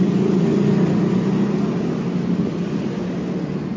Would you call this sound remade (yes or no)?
no